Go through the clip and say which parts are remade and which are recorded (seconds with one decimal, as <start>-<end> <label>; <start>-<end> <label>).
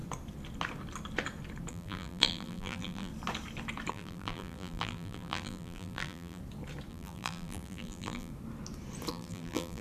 0.0-1.7 recorded; 1.7-3.1 remade; 3.1-3.9 recorded; 3.9-6.4 remade; 6.4-6.9 recorded; 6.9-8.3 remade; 8.3-9.1 recorded; 9.1-9.8 remade